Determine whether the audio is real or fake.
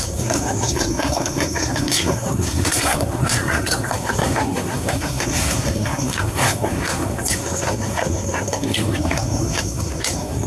fake